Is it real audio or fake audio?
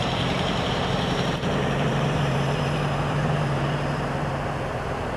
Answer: fake